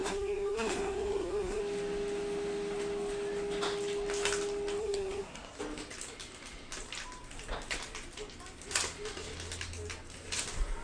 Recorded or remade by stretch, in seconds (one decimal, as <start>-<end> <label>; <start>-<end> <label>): 0.0-1.6 remade; 1.6-4.8 recorded; 4.8-5.6 remade; 5.6-10.8 recorded